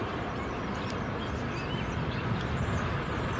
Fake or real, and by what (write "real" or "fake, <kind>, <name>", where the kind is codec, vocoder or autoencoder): real